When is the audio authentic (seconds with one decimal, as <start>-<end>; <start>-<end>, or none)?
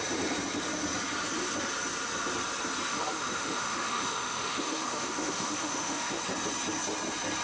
0.0-2.9; 6.2-7.4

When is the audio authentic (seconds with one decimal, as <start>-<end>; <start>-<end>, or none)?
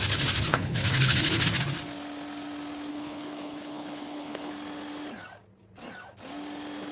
0.0-0.5; 1.4-2.9; 4.5-6.9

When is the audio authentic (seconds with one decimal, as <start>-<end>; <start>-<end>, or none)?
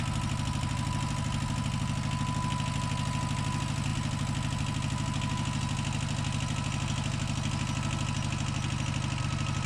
0.0-9.7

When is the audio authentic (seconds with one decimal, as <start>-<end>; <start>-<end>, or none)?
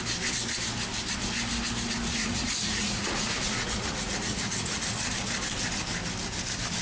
0.0-2.1; 5.1-6.8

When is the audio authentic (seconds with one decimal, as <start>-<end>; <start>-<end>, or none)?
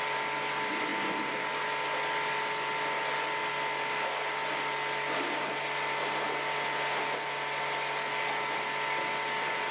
0.0-9.7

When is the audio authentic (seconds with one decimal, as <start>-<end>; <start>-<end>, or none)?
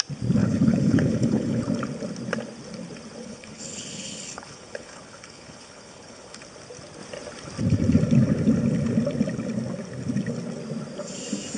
0.0-0.4; 1.6-3.2; 6.4-11.6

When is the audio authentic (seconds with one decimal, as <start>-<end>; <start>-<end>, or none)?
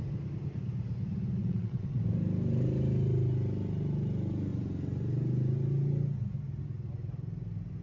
0.0-1.4; 2.0-7.8